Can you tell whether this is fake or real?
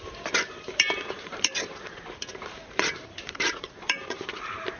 fake